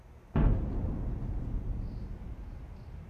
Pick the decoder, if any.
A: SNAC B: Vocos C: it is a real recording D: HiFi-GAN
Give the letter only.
C